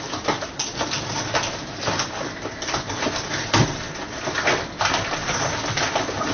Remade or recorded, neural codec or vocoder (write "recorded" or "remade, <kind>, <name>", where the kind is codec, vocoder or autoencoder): recorded